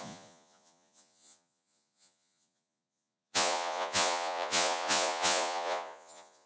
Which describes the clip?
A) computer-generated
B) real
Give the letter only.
A